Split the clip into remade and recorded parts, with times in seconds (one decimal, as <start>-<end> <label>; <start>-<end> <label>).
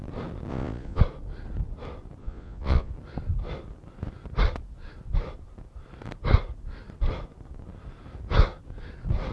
0.0-0.5 recorded; 0.5-1.0 remade; 1.0-2.2 recorded; 2.2-2.9 remade; 2.9-9.3 recorded